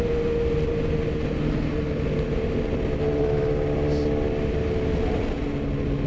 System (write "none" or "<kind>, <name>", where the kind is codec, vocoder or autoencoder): none